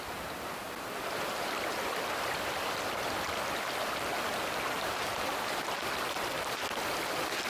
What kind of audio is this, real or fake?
real